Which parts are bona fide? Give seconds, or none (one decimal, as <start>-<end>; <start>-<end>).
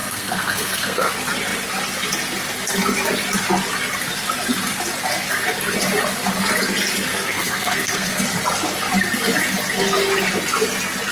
1.1-7.1; 8.2-11.1